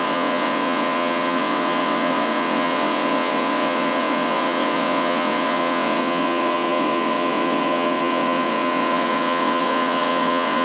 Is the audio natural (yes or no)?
no